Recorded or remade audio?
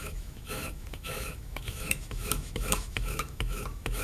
remade